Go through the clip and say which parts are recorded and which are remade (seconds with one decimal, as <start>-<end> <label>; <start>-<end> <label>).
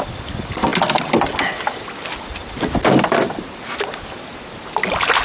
0.0-5.2 recorded